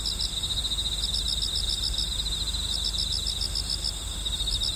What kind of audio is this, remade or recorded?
recorded